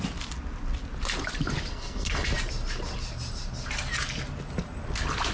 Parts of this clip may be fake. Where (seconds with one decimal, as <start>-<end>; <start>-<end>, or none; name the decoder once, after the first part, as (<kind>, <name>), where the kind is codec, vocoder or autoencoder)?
1.7-2.3 (codec, SNAC)